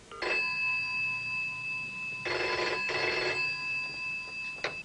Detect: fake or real real